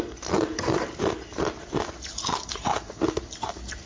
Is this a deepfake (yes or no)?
no